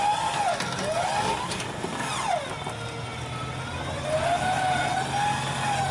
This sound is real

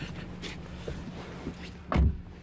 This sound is real